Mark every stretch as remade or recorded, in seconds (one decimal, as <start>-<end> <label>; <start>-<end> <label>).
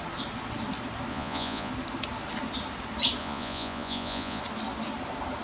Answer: 0.0-1.1 recorded; 1.1-1.7 remade; 1.7-3.2 recorded; 3.2-4.4 remade; 4.4-5.4 recorded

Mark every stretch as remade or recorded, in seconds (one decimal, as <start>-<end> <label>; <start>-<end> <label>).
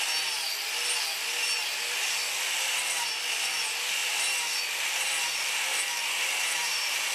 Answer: 0.0-6.6 recorded; 6.6-7.1 remade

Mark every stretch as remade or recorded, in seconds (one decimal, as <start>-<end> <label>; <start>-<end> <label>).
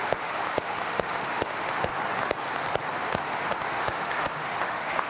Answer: 0.0-1.9 remade; 1.9-3.0 recorded; 3.0-5.1 remade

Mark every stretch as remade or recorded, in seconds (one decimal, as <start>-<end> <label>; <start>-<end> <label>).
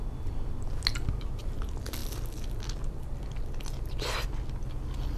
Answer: 0.0-5.2 recorded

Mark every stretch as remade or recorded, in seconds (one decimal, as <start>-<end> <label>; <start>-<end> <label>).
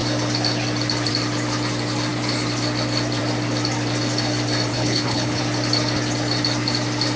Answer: 0.0-4.7 recorded; 4.7-5.4 remade; 5.4-7.2 recorded